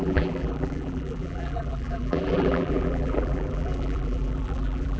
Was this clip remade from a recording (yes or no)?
yes